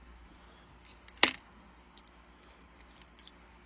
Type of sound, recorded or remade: recorded